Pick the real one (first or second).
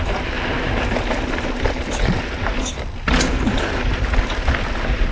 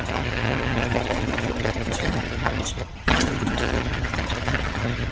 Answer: first